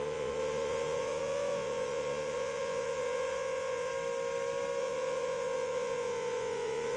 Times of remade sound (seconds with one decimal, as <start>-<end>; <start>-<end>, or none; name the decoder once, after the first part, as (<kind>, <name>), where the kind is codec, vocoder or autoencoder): 0.0-3.9 (vocoder, Vocos); 4.8-7.0